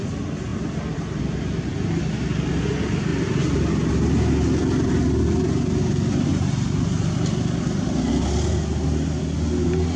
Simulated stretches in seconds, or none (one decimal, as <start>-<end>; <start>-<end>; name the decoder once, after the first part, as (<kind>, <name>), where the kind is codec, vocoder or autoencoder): none

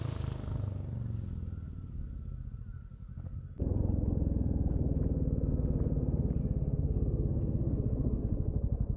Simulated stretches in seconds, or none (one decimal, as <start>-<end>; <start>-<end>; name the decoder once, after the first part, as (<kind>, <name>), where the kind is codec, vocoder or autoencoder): 6.4-8.2 (codec, SNAC)